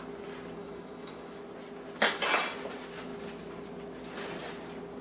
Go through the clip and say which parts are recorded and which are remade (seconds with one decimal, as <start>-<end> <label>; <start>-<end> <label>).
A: 0.0-0.6 recorded; 0.6-1.4 remade; 1.4-5.0 recorded